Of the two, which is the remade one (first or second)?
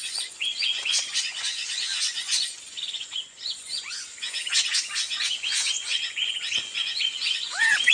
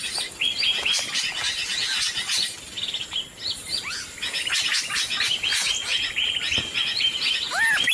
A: first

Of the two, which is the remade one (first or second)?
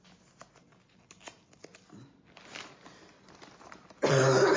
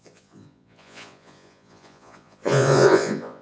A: second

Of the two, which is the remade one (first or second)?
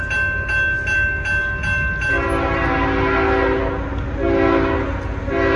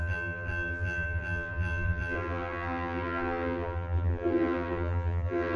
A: second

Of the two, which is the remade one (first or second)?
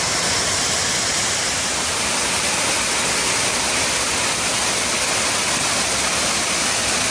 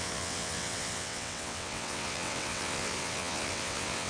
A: second